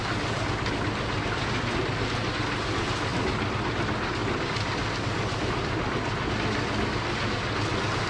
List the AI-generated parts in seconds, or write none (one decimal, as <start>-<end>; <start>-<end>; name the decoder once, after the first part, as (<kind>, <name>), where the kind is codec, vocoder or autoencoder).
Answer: none